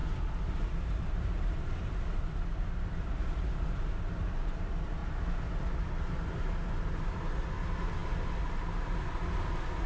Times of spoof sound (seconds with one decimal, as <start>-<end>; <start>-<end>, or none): none